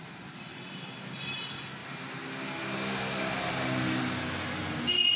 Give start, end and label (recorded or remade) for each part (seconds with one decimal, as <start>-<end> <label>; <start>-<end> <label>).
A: 0.0-0.5 recorded; 0.5-1.1 remade; 1.1-5.2 recorded